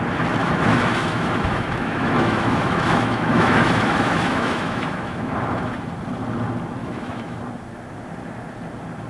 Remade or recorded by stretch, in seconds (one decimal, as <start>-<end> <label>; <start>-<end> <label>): 0.0-0.4 recorded; 0.4-5.3 remade; 5.3-6.8 recorded; 6.8-7.4 remade; 7.4-9.1 recorded